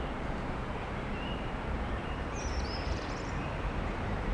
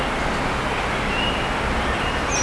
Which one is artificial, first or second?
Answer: first